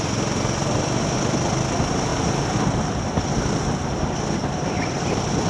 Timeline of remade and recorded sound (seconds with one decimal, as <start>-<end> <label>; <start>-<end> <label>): 0.0-5.5 recorded